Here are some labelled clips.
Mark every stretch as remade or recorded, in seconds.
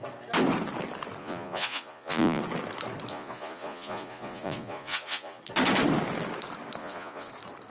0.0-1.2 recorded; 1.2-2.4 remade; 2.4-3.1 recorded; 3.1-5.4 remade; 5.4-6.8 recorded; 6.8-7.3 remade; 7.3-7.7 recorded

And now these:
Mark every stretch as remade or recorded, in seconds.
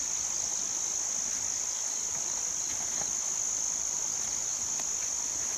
0.0-5.6 recorded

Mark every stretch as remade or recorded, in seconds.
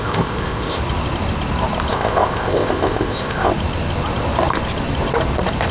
0.0-0.8 remade; 0.8-1.9 recorded; 1.9-3.5 remade; 3.5-5.7 recorded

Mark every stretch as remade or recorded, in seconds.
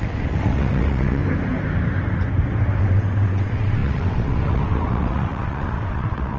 0.0-1.2 remade; 1.2-2.8 recorded; 2.8-6.4 remade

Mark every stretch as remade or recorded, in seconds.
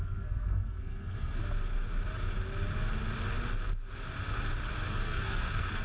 0.0-1.4 remade; 1.4-4.9 recorded; 4.9-5.8 remade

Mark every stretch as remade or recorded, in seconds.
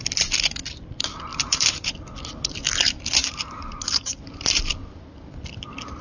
0.0-1.3 recorded; 1.3-1.9 remade; 1.9-3.2 recorded; 3.2-4.2 remade; 4.2-6.0 recorded